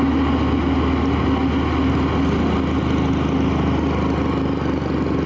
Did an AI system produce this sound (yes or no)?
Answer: no